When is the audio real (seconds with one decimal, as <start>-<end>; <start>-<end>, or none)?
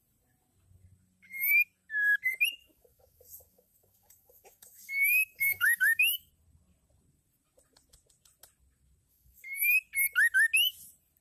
0.0-2.6; 6.3-9.1; 9.7-11.2